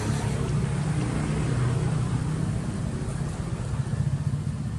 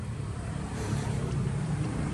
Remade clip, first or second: second